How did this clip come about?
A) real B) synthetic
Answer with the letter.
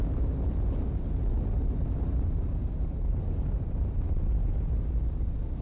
A